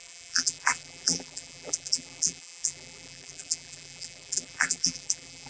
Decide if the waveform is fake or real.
fake